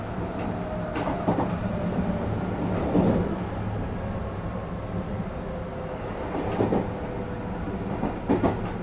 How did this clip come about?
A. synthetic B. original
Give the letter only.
B